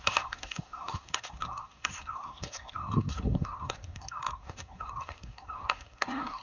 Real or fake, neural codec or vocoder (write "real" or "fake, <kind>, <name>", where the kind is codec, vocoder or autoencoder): fake, codec, SNAC